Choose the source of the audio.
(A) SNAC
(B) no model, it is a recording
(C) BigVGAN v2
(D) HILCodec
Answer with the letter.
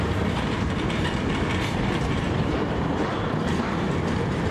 C